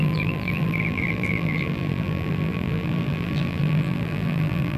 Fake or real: fake